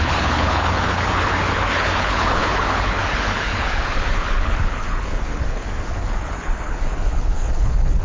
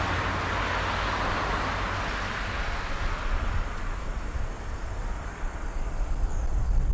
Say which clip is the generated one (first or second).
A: first